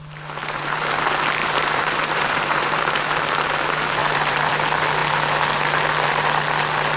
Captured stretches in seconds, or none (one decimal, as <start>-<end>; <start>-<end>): 0.0-0.4; 0.9-1.4; 3.0-4.0; 4.5-7.0